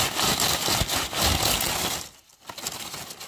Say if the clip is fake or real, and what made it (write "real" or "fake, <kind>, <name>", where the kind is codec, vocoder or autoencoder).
real